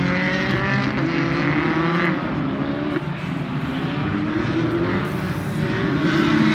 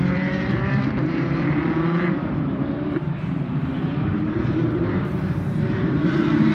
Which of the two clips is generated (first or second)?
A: second